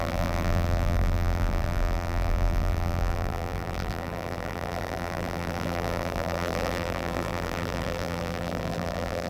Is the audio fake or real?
fake